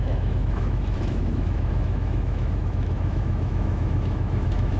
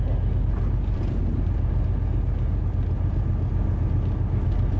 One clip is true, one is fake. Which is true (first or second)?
second